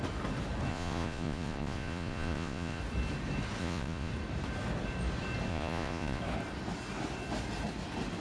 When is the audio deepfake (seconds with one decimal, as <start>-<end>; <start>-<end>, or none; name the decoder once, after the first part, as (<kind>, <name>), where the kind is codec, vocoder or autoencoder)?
0.7-2.8 (vocoder, Vocos); 3.6-4.1; 5.5-6.2